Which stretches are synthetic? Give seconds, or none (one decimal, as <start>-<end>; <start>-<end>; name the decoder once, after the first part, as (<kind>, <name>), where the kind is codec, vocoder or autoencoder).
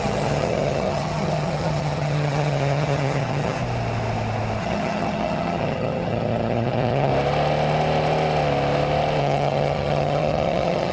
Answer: 0.0-3.6 (vocoder, HiFi-GAN); 4.6-7.1; 9.2-10.9